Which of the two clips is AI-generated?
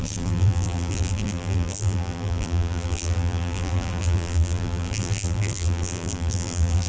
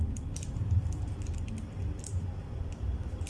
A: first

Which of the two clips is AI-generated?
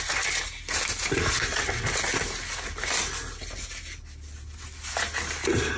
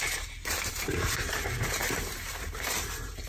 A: second